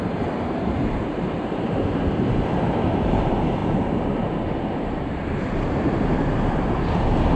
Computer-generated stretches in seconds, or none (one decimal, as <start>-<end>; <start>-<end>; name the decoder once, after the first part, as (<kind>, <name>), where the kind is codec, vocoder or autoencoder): 0.0-7.4 (vocoder, BigVGAN v2)